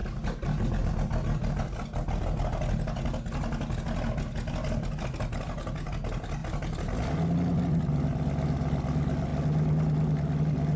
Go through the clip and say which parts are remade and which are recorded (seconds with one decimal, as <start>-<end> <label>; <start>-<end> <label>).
0.0-10.8 recorded